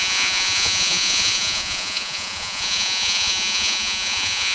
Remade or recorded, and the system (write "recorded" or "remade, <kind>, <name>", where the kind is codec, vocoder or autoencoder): remade, vocoder, Vocos